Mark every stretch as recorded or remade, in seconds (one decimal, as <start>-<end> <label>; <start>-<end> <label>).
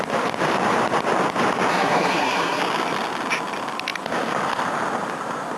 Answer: 0.0-1.7 recorded; 1.7-2.6 remade; 2.6-5.6 recorded